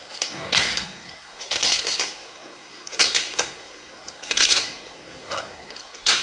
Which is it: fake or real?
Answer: fake